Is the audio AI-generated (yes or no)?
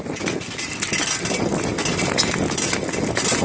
no